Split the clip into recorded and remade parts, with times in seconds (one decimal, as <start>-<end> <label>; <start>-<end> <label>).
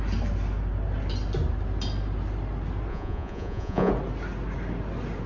0.0-2.9 recorded; 2.9-3.9 remade; 3.9-5.3 recorded